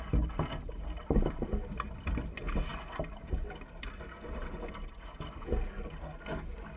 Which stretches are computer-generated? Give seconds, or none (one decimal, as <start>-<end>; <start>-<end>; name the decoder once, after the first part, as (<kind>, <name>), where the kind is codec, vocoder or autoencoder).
none